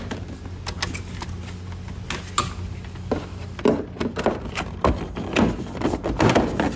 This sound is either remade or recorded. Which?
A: recorded